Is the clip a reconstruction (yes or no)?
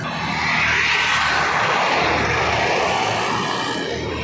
no